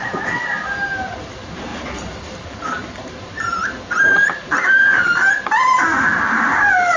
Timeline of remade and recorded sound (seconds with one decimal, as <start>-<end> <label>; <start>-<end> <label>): 0.0-7.0 recorded